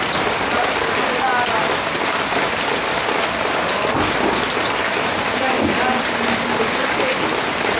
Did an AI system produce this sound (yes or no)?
no